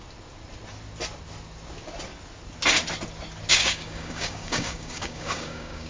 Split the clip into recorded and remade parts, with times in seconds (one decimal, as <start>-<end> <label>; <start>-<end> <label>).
0.0-3.5 recorded; 3.5-5.9 remade